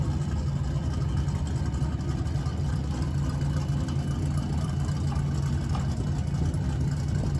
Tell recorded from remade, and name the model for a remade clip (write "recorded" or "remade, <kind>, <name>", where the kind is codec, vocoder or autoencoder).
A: recorded